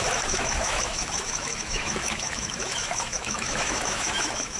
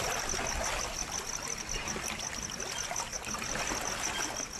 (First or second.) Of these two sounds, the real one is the second